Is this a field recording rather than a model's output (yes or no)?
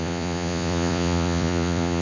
no